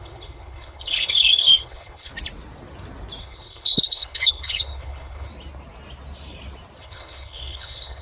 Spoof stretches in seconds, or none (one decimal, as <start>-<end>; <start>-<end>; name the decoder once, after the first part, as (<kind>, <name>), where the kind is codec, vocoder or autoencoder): 0.0-2.1 (codec, HILCodec); 3.2-5.3; 6.8-8.0